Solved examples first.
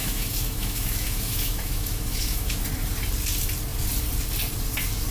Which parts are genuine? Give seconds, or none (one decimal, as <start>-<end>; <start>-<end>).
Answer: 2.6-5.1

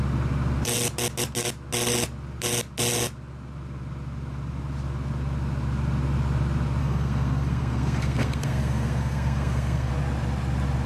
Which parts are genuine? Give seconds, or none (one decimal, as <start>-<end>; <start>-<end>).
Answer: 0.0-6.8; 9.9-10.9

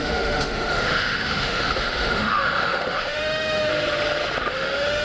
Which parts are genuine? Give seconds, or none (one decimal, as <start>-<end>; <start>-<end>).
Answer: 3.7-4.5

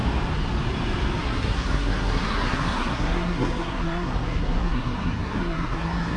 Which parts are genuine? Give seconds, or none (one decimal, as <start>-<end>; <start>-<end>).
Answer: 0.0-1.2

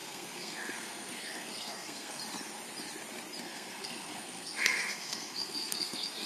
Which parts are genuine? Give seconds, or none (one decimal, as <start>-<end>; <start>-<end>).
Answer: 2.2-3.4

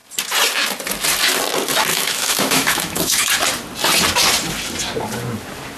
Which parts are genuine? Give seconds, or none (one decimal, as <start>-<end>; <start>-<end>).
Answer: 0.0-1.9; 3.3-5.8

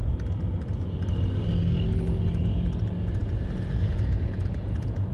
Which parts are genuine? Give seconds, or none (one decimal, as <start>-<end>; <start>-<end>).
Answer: 0.0-2.4